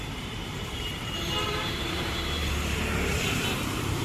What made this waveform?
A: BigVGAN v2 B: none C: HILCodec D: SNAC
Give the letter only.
A